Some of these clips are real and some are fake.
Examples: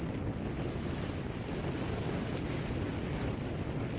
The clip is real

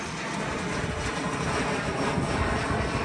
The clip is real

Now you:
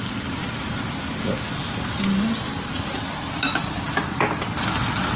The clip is real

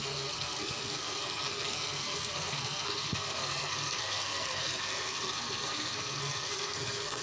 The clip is fake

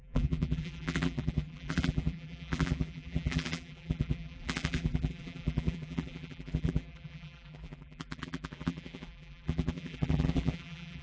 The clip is fake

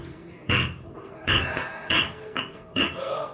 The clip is fake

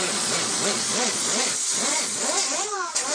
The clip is fake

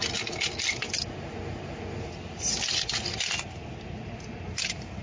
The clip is real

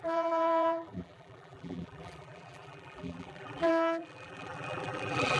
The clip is fake